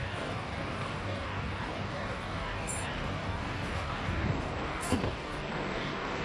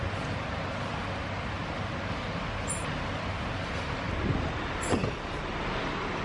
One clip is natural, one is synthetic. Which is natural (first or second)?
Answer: second